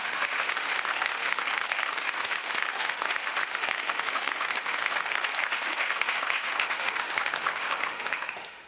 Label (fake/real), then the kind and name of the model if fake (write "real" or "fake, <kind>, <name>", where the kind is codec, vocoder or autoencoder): fake, autoencoder, DAC-VAE